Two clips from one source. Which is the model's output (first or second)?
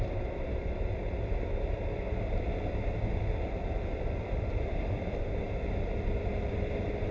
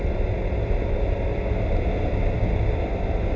first